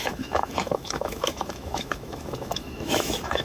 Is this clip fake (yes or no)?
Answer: yes